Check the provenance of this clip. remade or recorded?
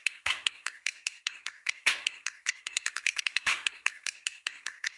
remade